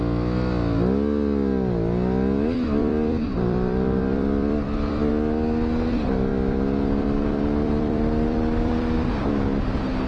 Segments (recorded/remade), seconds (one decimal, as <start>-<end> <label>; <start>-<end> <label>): 0.0-2.8 recorded; 2.8-5.1 remade; 5.1-6.3 recorded; 6.3-9.6 remade; 9.6-10.1 recorded